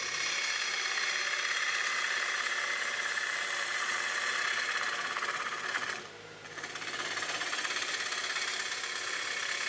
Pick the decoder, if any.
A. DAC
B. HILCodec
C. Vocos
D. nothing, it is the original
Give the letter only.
D